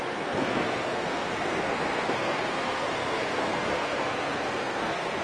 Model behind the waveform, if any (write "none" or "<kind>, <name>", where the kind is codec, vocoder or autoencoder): codec, SNAC